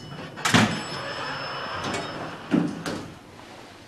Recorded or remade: recorded